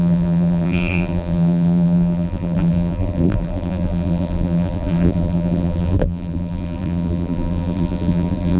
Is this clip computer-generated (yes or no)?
yes